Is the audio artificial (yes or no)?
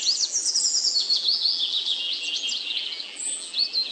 yes